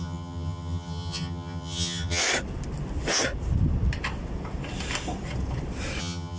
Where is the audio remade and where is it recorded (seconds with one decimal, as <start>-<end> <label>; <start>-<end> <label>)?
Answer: 0.0-2.2 remade; 2.2-6.0 recorded; 6.0-6.4 remade